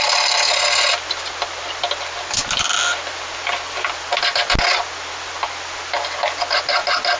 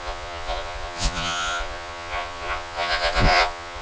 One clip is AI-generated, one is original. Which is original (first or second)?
first